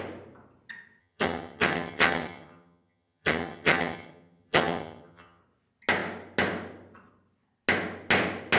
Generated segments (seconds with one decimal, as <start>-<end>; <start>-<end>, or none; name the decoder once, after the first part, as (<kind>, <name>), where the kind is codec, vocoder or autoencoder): 1.0-5.4 (vocoder, HiFi-GAN)